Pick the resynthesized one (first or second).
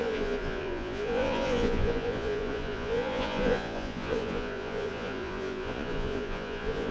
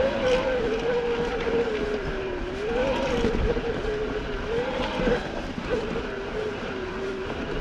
first